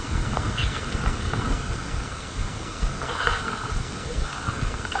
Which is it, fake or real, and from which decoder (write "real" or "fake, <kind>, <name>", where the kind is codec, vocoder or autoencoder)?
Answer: fake, codec, SNAC